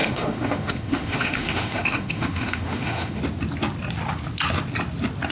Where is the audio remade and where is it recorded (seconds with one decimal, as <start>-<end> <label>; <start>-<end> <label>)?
0.0-3.2 remade; 3.2-5.3 recorded